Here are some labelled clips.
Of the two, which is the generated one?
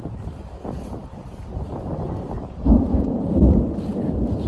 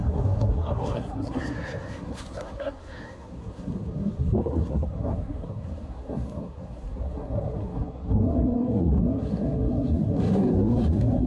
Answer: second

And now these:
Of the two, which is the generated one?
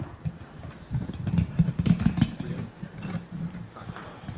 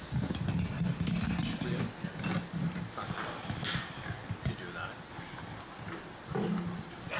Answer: first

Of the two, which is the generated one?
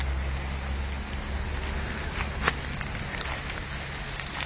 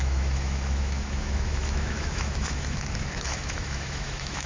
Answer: second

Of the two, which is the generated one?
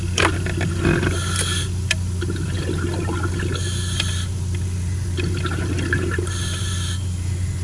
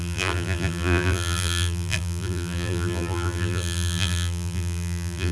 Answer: second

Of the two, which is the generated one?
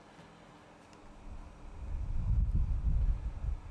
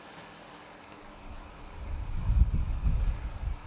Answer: second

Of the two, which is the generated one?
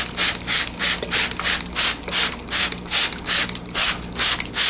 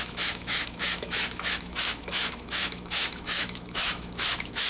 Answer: second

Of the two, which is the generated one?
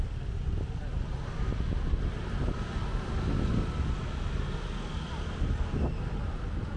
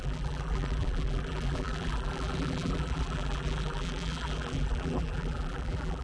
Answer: second